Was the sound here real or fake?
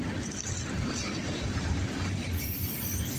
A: real